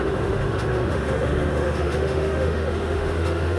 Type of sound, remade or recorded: remade